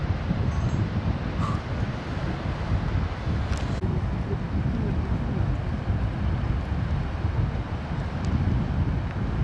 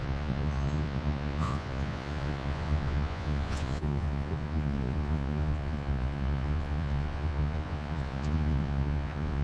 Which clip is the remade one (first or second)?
second